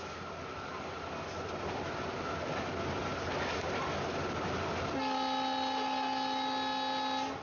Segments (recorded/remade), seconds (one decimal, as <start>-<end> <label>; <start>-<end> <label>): 0.0-7.4 recorded